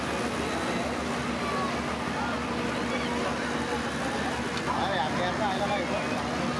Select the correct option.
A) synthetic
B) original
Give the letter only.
B